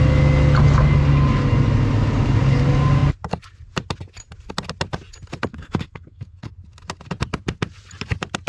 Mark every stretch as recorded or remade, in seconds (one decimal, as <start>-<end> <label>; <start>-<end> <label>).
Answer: 0.0-5.5 recorded; 5.5-6.5 remade; 6.5-8.5 recorded